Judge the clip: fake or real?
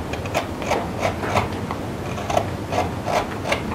real